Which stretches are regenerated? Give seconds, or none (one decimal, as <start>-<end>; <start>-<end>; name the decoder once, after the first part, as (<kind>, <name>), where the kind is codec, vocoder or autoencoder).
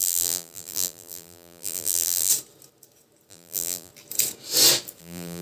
0.0-2.3 (vocoder, BigVGAN v2); 3.3-3.9; 5.0-5.4